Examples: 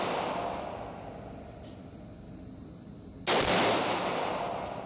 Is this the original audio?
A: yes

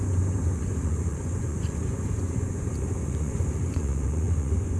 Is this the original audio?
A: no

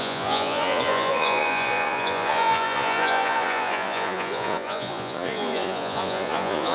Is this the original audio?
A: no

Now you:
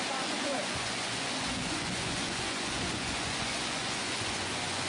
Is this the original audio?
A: no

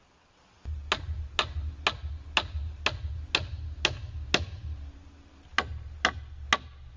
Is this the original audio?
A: yes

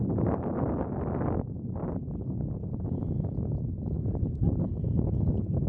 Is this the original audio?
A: yes